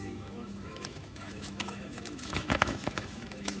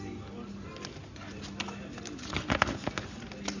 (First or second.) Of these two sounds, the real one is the second